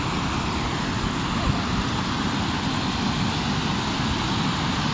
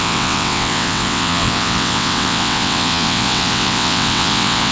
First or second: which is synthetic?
second